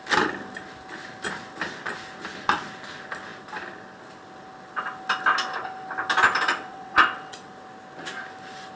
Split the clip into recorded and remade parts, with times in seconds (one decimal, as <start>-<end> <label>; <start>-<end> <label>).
0.0-6.5 recorded; 6.5-7.5 remade; 7.5-8.8 recorded